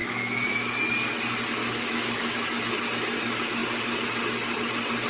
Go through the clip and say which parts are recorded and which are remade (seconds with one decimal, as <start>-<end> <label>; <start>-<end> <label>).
0.0-0.9 remade; 0.9-1.6 recorded; 1.6-2.7 remade; 2.7-5.1 recorded